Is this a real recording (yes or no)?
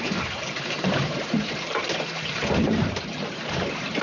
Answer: no